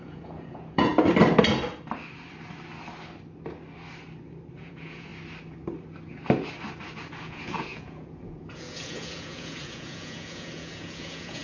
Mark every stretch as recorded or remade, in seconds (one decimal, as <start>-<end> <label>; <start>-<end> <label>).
0.0-0.9 remade; 0.9-4.6 recorded; 4.6-5.1 remade; 5.1-7.2 recorded; 7.2-11.4 remade